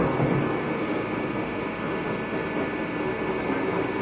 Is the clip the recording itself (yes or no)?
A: yes